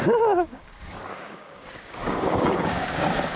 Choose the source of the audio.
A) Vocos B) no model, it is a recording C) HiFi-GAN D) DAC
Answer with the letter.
D